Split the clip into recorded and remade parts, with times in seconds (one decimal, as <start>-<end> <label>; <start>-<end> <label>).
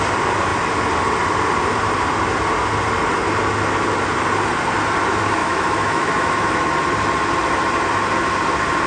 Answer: 0.0-5.4 recorded; 5.4-6.7 remade; 6.7-8.9 recorded